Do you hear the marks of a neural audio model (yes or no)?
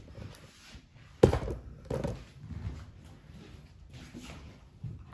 no